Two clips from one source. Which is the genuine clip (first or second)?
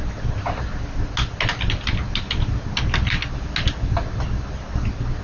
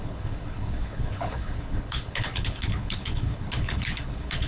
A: first